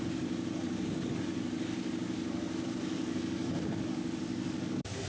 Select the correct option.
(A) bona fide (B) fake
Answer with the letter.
B